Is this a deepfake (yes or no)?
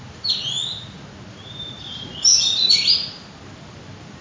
no